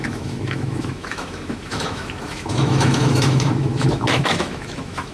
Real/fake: fake